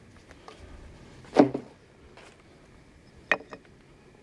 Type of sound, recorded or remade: recorded